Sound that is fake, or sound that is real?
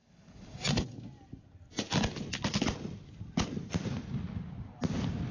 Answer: real